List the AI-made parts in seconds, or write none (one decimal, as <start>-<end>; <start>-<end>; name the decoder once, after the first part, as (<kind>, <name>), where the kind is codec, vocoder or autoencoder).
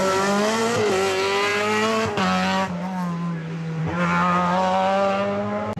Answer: none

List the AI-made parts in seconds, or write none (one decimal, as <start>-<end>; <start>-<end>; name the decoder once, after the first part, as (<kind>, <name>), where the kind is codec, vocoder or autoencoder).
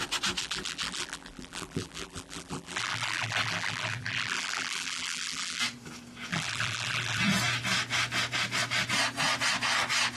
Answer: 0.4-5.6 (vocoder, BigVGAN v2); 6.3-7.2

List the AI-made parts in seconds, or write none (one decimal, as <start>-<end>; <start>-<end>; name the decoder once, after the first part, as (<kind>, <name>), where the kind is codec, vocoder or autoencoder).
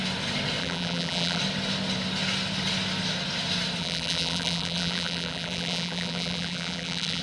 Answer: 0.6-1.4 (vocoder, BigVGAN v2); 3.8-7.2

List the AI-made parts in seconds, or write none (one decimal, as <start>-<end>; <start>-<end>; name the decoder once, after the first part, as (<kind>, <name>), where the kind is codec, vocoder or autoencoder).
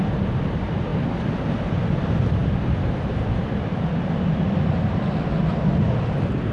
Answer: 2.4-5.6 (vocoder, BigVGAN v2)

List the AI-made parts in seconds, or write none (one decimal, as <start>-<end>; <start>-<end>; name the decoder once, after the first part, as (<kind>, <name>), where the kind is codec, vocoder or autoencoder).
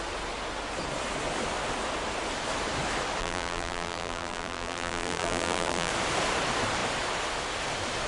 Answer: 3.2-5.9 (vocoder, BigVGAN v2)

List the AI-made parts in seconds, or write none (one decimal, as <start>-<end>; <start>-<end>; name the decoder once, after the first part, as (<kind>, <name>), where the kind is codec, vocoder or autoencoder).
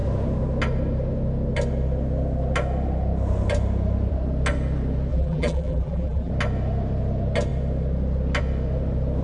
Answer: 5.1-6.3 (vocoder, BigVGAN v2)